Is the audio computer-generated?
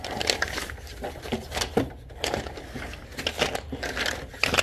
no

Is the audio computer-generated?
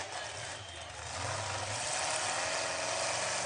no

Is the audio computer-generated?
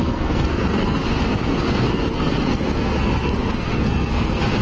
yes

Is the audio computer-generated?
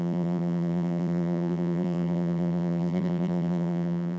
yes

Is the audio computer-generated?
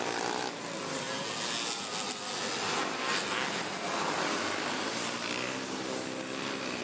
no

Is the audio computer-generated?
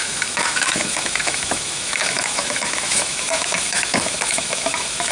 yes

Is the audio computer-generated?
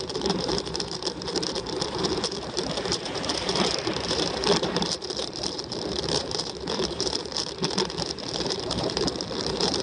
yes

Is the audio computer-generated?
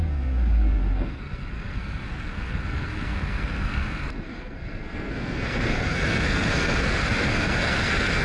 yes